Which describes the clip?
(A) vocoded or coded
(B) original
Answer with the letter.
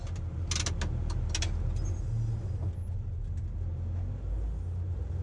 B